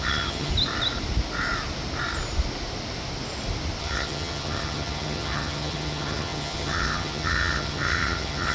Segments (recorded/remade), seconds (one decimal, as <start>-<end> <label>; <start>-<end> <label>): 0.0-0.5 remade; 0.5-3.8 recorded; 3.8-8.5 remade

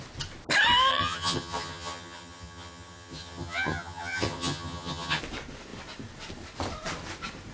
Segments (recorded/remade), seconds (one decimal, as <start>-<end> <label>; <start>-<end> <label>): 0.0-0.9 recorded; 0.9-5.2 remade; 5.2-7.5 recorded